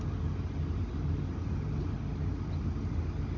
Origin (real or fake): real